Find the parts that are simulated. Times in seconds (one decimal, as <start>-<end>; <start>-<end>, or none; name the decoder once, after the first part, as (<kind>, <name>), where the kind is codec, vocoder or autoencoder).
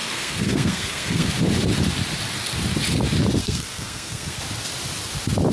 0.0-1.3 (codec, SNAC); 3.4-4.4